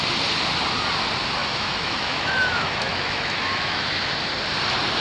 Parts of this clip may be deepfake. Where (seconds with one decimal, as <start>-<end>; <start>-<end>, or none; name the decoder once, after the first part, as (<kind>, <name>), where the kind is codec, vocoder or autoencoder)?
1.4-4.1 (autoencoder, DAC-VAE)